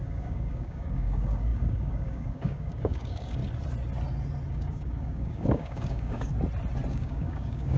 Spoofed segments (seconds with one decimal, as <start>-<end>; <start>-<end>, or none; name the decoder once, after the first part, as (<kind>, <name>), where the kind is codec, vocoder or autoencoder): 0.0-3.4 (codec, DAC); 4.5-6.3; 6.9-7.8